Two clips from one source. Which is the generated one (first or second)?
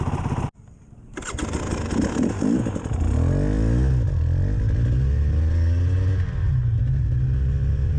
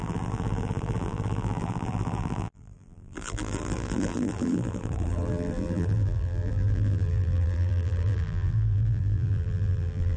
second